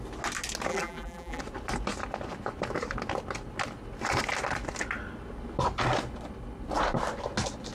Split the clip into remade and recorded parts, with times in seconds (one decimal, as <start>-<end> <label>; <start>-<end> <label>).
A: 0.0-0.7 recorded; 0.7-1.4 remade; 1.4-7.7 recorded